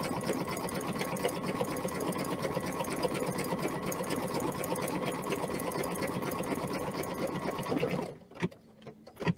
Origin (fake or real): real